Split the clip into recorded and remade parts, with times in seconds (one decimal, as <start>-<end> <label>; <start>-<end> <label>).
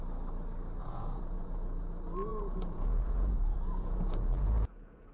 0.0-0.8 recorded; 0.8-1.9 remade; 1.9-2.3 recorded; 2.3-5.1 remade